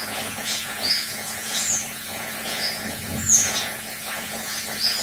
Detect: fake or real fake